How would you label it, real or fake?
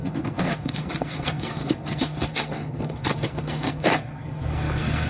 fake